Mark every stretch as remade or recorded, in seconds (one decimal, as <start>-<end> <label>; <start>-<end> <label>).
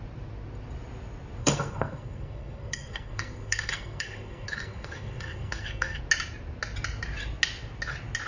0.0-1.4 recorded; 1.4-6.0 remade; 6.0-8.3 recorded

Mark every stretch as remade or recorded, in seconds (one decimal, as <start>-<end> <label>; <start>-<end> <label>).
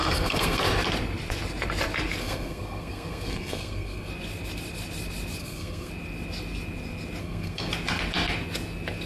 0.0-0.6 remade; 0.6-2.2 recorded; 2.2-4.1 remade; 4.1-5.4 recorded; 5.4-5.9 remade; 5.9-7.2 recorded; 7.2-7.7 remade; 7.7-9.1 recorded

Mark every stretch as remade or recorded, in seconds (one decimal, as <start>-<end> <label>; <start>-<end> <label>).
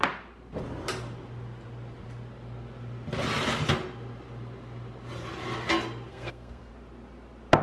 0.0-6.1 recorded; 6.1-6.7 remade; 6.7-7.6 recorded